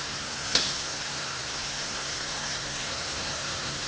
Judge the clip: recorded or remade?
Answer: remade